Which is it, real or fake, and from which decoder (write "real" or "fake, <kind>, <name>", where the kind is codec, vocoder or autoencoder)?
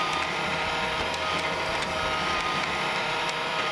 fake, vocoder, BigVGAN v2